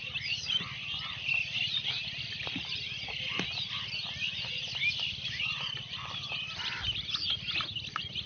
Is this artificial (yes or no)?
yes